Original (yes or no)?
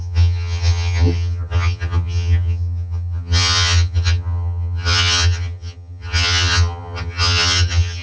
no